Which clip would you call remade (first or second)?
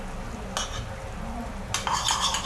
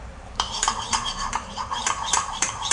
second